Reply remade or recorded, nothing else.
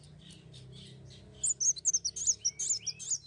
recorded